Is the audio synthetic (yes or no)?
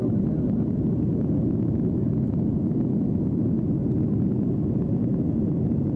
no